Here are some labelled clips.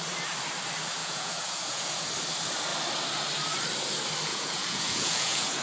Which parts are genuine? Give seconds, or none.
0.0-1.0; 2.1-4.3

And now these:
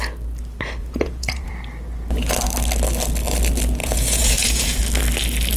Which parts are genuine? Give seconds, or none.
0.0-0.8; 1.5-3.8; 4.8-5.6

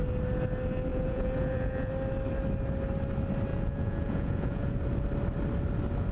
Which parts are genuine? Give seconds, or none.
0.0-0.9; 1.9-3.5; 4.8-6.1

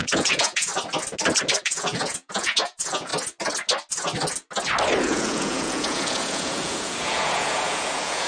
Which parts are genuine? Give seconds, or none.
0.7-1.6; 3.1-5.0

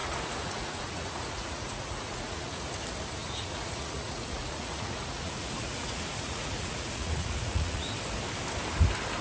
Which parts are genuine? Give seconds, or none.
2.7-3.2; 7.9-9.2

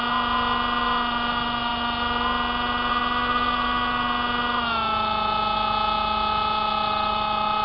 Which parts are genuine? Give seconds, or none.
0.0-7.6

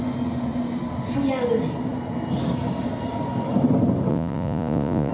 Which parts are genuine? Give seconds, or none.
0.0-4.1